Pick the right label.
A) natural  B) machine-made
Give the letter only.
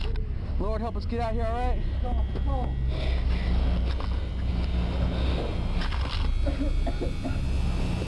A